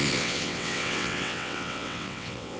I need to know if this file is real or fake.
fake